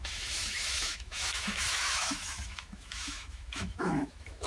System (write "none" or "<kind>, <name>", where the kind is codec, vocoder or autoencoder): autoencoder, DAC-VAE